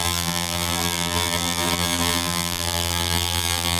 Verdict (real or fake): fake